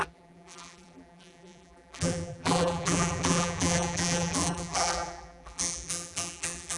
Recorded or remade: remade